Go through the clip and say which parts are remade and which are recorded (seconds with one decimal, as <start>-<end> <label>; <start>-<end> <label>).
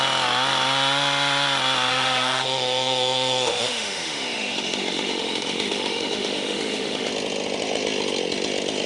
0.0-1.9 recorded; 1.9-7.1 remade; 7.1-8.9 recorded